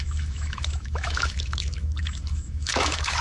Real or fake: fake